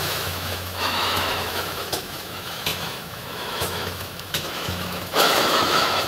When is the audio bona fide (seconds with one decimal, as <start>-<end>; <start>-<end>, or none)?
none